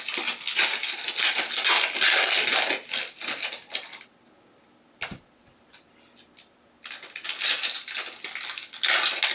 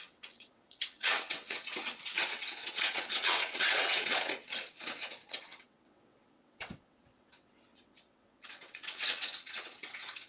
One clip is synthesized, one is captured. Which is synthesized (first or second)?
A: second